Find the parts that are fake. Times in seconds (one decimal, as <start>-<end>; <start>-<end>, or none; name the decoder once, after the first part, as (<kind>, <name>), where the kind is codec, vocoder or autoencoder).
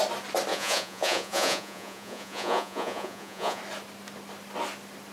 0.5-3.6 (vocoder, Vocos)